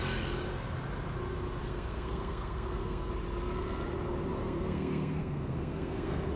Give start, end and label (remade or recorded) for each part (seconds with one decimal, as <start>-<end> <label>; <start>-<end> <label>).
0.0-1.6 recorded; 1.6-3.1 remade; 3.1-4.3 recorded; 4.3-6.4 remade